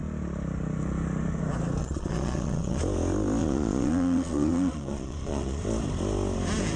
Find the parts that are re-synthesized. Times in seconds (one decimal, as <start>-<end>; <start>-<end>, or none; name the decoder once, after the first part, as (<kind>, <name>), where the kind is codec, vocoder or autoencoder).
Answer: 1.8-2.8 (vocoder, Vocos); 3.4-5.6